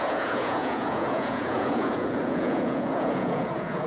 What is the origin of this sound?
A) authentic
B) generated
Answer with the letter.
B